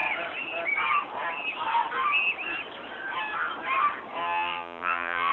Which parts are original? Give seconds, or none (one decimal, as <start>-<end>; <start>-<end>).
0.0-4.2

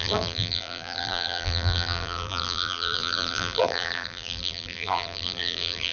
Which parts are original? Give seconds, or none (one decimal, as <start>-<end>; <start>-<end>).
none

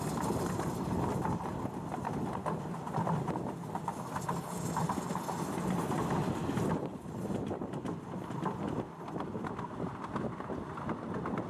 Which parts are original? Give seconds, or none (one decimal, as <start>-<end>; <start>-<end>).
0.0-11.5

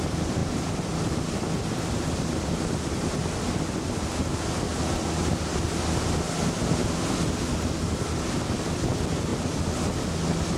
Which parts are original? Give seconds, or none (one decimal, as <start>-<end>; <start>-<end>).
0.0-0.4; 2.6-4.7; 5.2-10.6

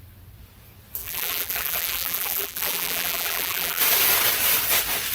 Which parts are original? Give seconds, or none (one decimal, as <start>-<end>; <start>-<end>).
0.0-1.0; 3.8-5.1